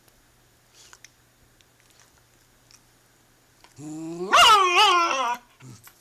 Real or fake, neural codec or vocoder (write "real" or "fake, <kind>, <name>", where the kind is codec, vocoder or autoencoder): real